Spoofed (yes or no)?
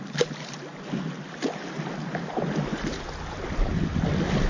no